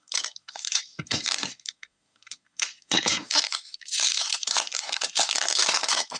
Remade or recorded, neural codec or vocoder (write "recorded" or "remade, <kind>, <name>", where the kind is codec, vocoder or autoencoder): remade, codec, SNAC